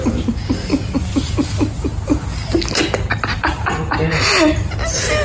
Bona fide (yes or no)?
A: yes